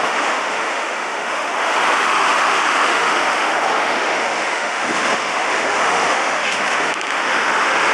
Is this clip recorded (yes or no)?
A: no